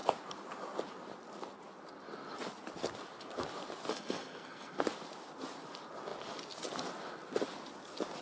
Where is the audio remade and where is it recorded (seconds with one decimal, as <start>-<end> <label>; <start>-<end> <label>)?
0.0-3.9 recorded; 3.9-4.8 remade; 4.8-8.2 recorded